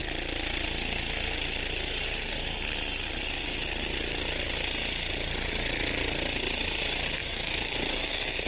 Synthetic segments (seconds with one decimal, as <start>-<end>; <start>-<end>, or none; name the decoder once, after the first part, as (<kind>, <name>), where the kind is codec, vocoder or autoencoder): 7.2-8.5 (codec, DAC)